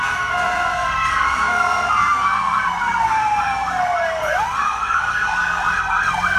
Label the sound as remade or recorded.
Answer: remade